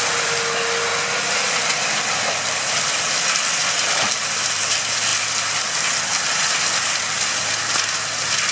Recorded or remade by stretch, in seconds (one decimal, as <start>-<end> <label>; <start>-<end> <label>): 0.0-8.5 recorded